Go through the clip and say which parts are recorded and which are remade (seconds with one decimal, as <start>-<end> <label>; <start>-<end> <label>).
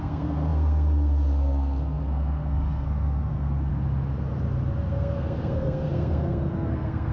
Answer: 0.0-3.7 remade; 3.7-4.9 recorded; 4.9-7.1 remade